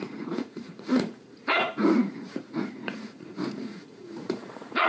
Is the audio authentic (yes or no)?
no